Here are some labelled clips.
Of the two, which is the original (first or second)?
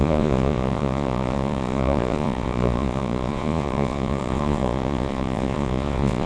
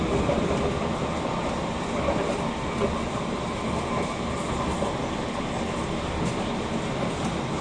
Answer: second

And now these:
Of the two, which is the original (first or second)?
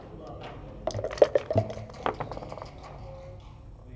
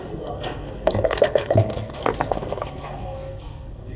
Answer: first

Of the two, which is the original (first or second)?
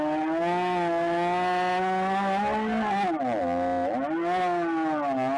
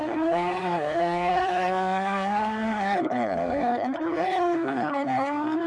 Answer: first